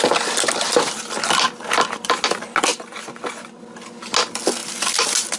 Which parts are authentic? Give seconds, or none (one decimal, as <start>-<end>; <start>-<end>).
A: 0.0-5.4